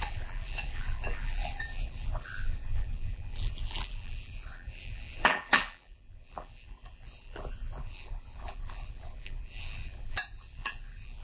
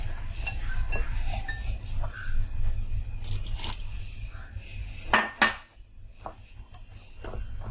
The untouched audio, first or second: second